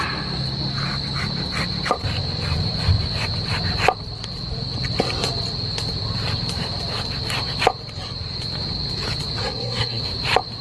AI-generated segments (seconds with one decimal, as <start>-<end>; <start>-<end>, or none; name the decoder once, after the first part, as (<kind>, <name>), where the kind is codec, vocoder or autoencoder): 9.4-10.0 (codec, SNAC)